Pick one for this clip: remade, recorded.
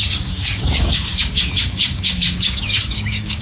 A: remade